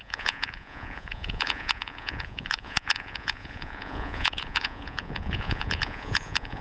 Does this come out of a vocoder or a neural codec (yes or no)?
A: yes